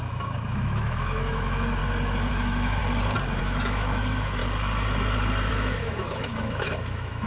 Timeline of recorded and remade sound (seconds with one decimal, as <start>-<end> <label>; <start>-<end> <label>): 0.0-1.8 remade; 1.8-2.3 recorded; 2.3-2.8 remade; 2.8-3.4 recorded; 3.4-4.4 remade; 4.4-5.5 recorded; 5.5-7.3 remade